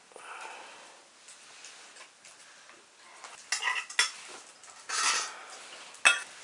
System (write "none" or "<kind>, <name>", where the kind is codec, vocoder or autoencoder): none